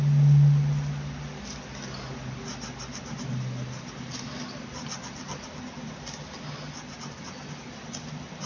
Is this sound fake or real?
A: real